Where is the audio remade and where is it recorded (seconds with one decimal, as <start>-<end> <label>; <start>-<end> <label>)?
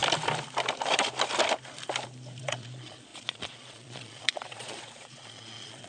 0.0-2.4 recorded; 2.4-5.9 remade